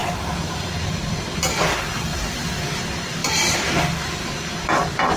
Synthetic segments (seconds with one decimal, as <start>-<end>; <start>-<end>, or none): 0.0-1.6; 3.2-3.8

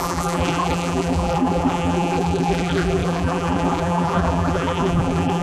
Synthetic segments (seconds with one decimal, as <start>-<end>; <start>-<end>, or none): 0.0-5.4